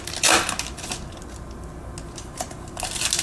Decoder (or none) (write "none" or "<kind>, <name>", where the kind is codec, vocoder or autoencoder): none